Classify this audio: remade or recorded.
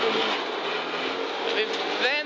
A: recorded